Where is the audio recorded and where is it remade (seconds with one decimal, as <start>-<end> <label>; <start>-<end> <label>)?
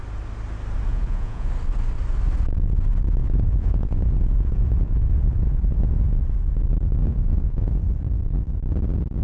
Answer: 0.0-0.9 recorded; 0.9-1.5 remade; 1.5-3.2 recorded; 3.2-6.2 remade; 6.2-7.0 recorded; 7.0-7.8 remade; 7.8-9.2 recorded